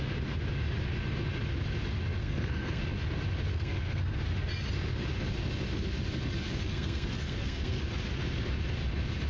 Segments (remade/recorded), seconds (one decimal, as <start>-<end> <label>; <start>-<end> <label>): 0.0-2.2 recorded; 2.2-2.8 remade; 2.8-3.5 recorded; 3.5-4.2 remade; 4.2-6.6 recorded; 6.6-7.8 remade; 7.8-9.3 recorded